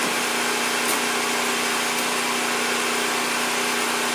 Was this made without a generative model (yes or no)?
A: yes